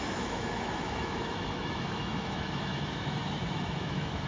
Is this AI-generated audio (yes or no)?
yes